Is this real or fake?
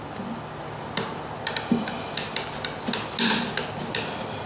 real